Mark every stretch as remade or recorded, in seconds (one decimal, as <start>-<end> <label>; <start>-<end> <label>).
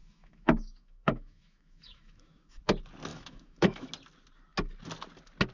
0.0-2.6 remade; 2.6-3.1 recorded; 3.1-3.9 remade; 3.9-5.5 recorded